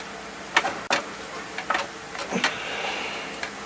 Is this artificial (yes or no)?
no